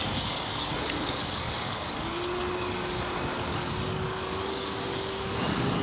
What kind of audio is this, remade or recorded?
remade